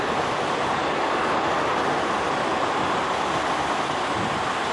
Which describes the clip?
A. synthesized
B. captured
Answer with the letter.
B